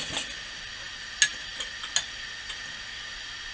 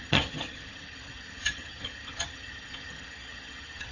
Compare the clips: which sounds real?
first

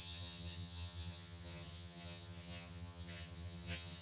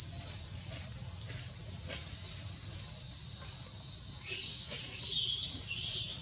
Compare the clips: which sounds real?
second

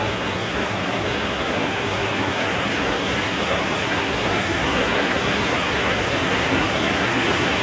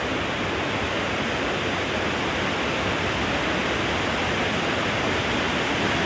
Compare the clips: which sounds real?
second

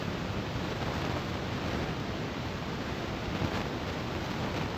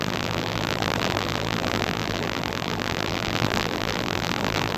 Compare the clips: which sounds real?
first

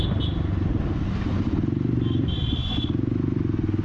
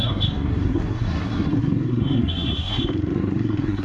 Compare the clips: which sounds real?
first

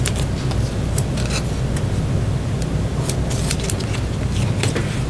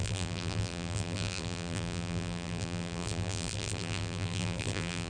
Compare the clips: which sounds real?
first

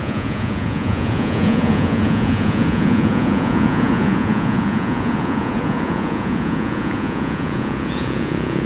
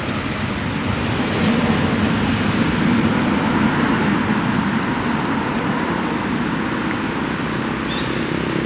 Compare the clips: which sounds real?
second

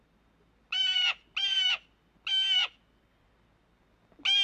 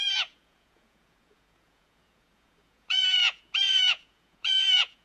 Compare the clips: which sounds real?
first